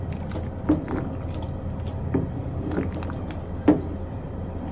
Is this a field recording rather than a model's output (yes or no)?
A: yes